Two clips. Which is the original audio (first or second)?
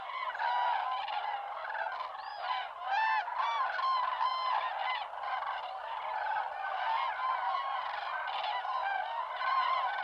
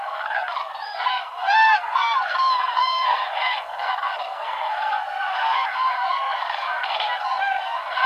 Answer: first